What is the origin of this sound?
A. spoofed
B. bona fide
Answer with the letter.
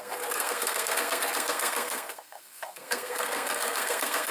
A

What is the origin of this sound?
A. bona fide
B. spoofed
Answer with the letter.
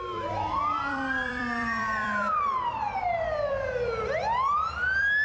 B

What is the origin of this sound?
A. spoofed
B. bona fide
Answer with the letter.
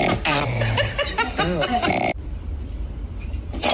A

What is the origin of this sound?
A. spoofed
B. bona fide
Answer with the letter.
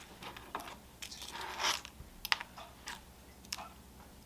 B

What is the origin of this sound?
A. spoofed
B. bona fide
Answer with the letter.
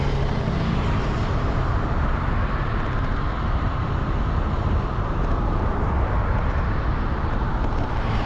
A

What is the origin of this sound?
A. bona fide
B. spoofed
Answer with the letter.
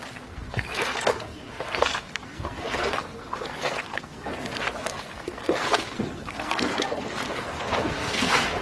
B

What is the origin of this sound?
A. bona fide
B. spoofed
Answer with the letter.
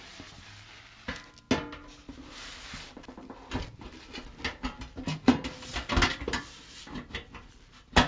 A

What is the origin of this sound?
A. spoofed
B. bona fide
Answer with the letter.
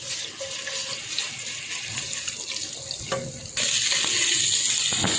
B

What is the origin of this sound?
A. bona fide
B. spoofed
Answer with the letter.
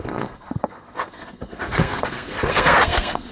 B